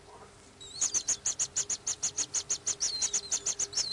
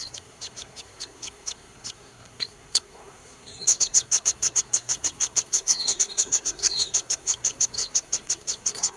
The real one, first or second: first